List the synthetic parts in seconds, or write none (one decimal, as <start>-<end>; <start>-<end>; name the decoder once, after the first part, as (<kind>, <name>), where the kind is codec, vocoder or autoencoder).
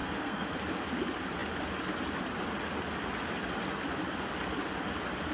0.0-0.6 (codec, SNAC)